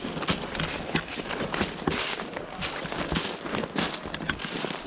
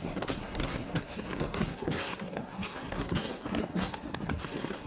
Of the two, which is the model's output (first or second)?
second